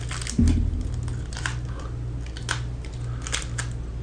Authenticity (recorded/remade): recorded